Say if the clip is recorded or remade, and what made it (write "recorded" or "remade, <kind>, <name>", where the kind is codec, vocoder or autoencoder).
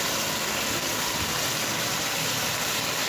recorded